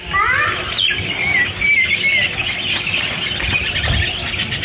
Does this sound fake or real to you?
real